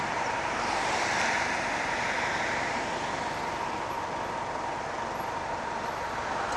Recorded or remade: recorded